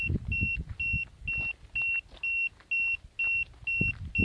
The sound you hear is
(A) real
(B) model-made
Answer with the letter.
A